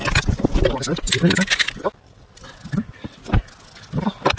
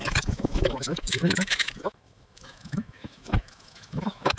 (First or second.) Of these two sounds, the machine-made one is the second